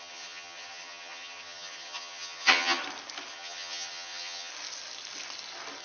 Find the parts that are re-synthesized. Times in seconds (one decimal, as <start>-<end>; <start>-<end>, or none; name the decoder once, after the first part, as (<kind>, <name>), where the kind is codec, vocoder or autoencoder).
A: 0.0-2.8 (vocoder, HiFi-GAN); 3.3-4.5